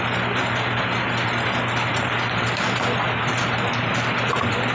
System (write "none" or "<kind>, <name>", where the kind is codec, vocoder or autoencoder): none